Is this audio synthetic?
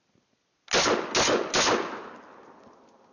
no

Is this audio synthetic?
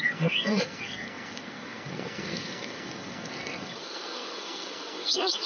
yes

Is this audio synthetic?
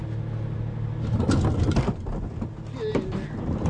no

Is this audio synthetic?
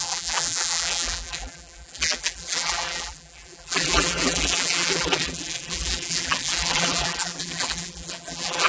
yes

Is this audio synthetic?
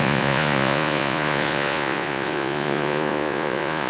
yes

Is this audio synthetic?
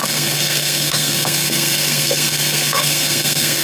yes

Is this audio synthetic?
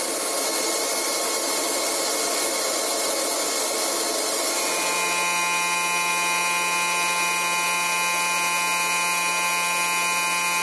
no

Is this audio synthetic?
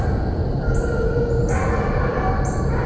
no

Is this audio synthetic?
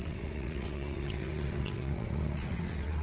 yes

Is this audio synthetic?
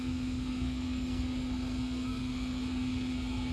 yes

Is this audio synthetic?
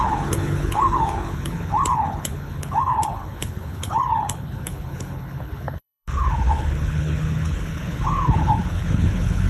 yes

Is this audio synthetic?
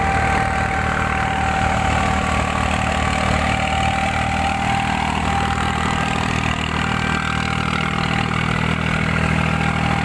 no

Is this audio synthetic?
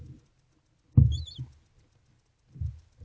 no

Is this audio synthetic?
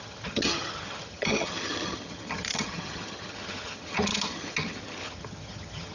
yes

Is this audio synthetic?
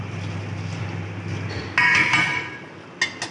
no